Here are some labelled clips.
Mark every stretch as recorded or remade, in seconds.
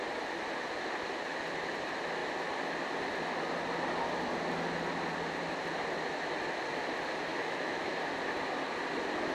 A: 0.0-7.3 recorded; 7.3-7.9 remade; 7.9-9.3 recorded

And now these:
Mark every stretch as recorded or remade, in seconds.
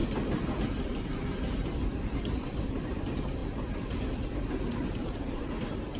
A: 0.0-0.8 recorded; 0.8-6.0 remade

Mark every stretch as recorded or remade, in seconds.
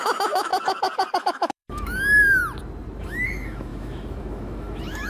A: 0.0-0.5 remade; 0.5-1.2 recorded; 1.2-2.4 remade; 2.4-3.0 recorded; 3.0-5.1 remade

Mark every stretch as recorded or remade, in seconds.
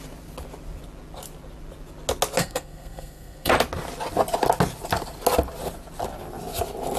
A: 0.0-2.4 recorded; 2.4-3.5 remade; 3.5-7.0 recorded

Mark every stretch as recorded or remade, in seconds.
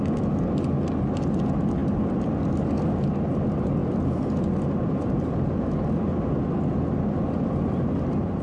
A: 0.0-8.4 recorded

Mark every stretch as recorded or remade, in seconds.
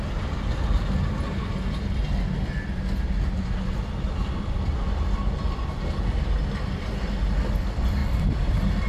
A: 0.0-8.0 recorded; 8.0-8.5 remade; 8.5-8.9 recorded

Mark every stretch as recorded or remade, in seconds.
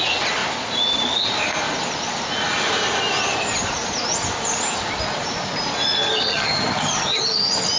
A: 0.0-6.3 recorded; 6.3-7.2 remade; 7.2-7.8 recorded